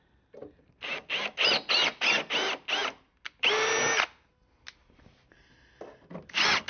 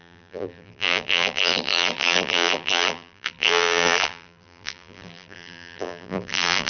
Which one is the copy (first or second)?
second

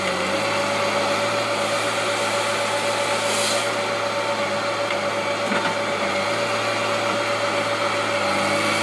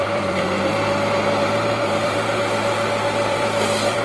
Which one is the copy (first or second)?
second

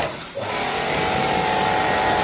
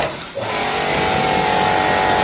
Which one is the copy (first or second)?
first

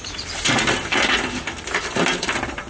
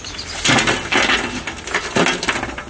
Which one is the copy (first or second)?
first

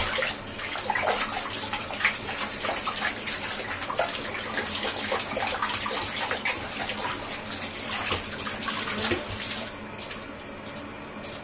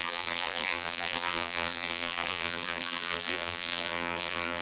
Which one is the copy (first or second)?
second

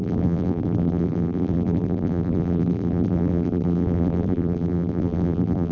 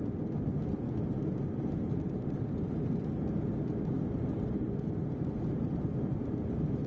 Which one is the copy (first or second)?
first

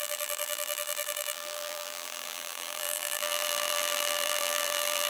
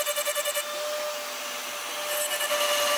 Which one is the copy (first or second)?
first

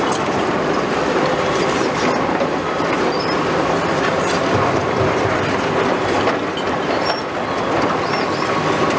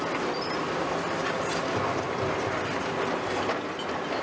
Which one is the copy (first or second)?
first